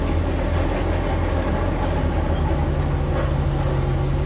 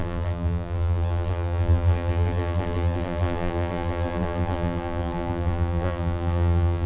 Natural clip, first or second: first